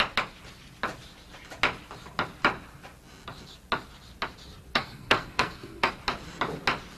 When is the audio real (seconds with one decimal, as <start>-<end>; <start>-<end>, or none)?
0.0-4.7; 5.9-7.0